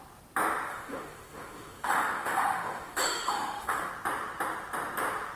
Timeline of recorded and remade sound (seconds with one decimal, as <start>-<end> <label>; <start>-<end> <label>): 0.0-0.7 recorded; 0.7-3.9 remade; 3.9-5.4 recorded